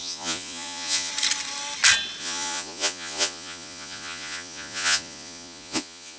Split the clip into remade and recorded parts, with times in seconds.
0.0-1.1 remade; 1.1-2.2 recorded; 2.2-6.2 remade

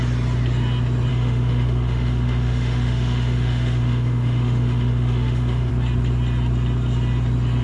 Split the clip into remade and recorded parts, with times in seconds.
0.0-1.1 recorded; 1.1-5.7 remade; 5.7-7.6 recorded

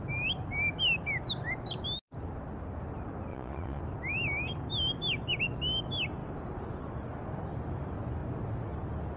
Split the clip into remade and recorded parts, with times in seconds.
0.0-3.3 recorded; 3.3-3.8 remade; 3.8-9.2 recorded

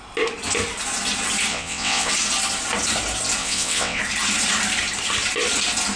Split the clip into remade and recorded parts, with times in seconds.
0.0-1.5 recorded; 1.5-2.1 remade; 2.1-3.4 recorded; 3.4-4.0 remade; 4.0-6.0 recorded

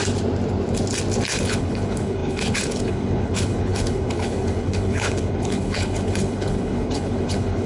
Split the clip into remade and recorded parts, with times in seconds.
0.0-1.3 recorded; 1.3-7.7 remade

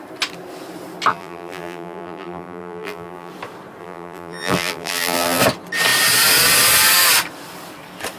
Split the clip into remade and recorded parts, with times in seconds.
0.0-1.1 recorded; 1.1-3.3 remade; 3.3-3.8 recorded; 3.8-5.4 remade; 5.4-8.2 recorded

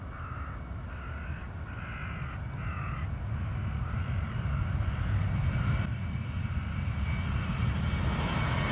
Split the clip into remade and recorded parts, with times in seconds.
0.0-8.7 recorded

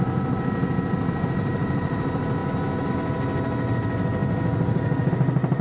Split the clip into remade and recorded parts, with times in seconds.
0.0-1.5 recorded; 1.5-2.0 remade; 2.0-5.6 recorded